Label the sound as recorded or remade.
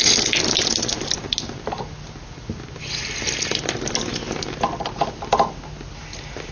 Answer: recorded